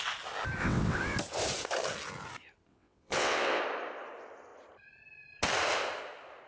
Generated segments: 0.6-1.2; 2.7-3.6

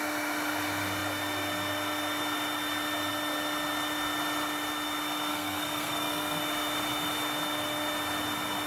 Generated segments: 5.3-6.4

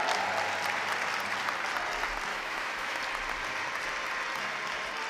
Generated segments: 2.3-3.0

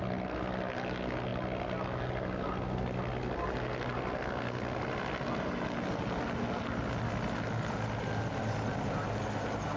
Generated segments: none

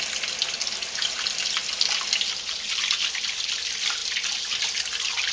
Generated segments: none

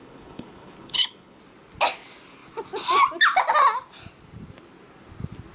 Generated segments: 0.0-1.4

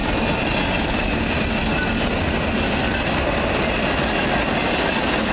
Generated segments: none